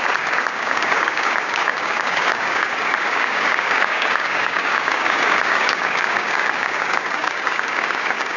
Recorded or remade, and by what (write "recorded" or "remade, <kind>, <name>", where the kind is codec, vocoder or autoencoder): remade, codec, DAC